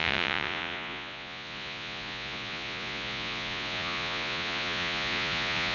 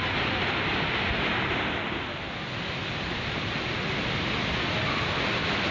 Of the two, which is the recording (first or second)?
second